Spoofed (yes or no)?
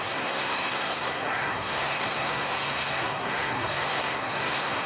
yes